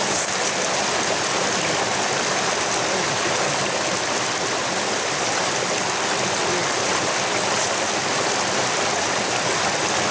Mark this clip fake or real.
real